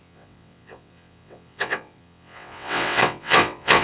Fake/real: fake